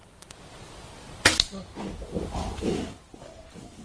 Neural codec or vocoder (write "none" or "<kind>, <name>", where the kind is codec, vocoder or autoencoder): none